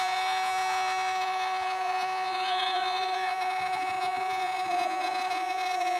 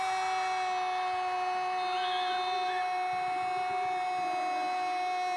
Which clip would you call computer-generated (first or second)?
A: first